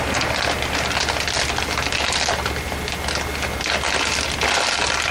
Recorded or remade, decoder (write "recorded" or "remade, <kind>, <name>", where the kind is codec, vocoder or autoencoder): recorded